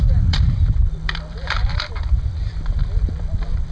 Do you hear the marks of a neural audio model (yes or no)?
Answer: yes